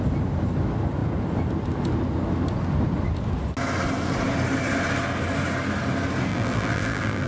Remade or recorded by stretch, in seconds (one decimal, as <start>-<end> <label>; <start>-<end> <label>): 0.0-6.3 recorded; 6.3-7.3 remade